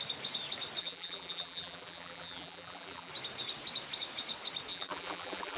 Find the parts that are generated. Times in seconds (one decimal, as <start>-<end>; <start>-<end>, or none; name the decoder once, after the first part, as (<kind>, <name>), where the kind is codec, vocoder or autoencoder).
0.8-3.1 (vocoder, BigVGAN v2); 4.7-5.6